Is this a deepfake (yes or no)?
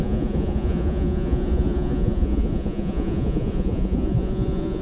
yes